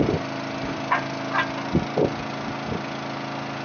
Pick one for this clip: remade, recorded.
recorded